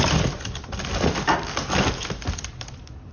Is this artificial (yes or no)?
yes